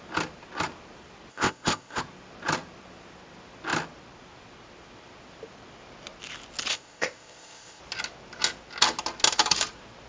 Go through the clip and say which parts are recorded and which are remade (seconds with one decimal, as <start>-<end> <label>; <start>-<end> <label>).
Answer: 0.0-1.3 recorded; 1.3-2.0 remade; 2.0-6.7 recorded; 6.7-7.8 remade; 7.8-10.1 recorded